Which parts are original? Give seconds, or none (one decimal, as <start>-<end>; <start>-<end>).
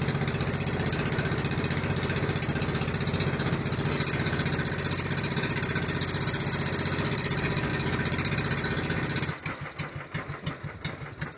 0.0-11.4